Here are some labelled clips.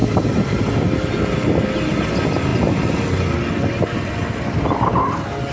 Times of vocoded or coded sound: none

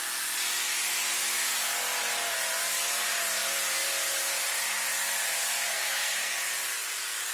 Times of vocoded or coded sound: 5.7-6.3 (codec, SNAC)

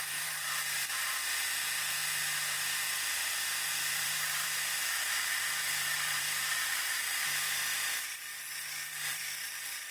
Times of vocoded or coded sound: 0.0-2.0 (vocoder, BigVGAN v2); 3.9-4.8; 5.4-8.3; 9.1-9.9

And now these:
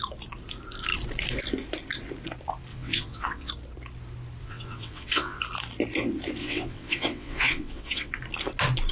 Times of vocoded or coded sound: 2.7-3.5 (vocoder, WaveNeXt); 4.4-5.4; 6.4-8.1

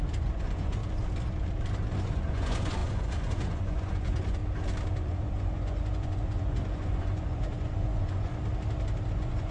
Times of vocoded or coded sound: 0.0-0.8 (vocoder, Vocos); 2.0-4.4; 5.0-8.3; 9.1-9.5

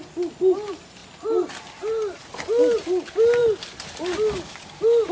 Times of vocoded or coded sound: none

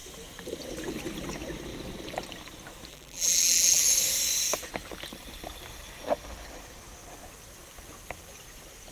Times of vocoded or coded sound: 2.9-3.8 (vocoder, BigVGAN v2)

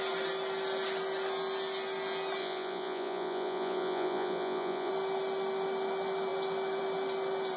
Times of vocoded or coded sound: 2.4-4.9 (vocoder, Vocos)